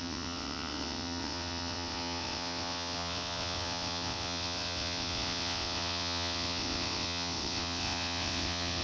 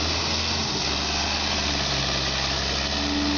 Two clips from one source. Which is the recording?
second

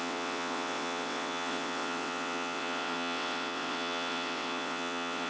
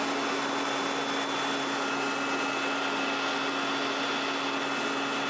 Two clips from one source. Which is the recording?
second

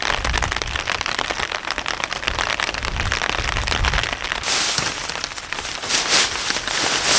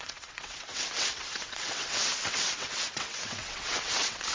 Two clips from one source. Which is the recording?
first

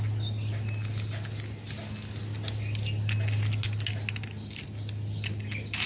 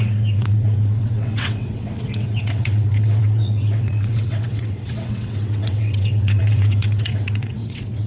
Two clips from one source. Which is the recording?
first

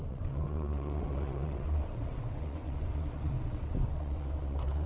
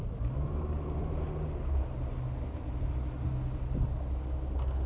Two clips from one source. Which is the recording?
second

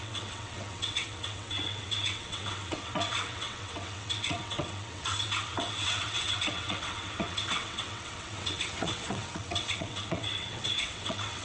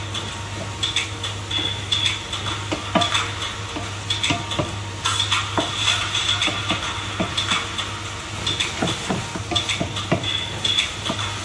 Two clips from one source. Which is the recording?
second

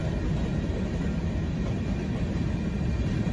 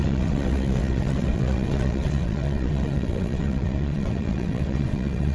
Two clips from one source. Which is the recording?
first